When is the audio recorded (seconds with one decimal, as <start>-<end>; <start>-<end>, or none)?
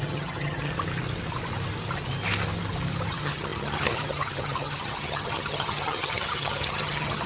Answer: 0.7-3.1